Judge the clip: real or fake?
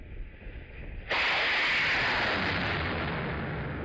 real